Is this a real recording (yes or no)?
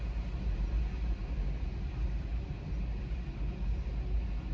yes